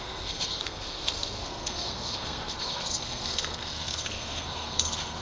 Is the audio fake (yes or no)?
yes